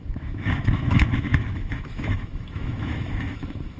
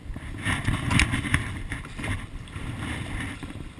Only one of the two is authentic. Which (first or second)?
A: second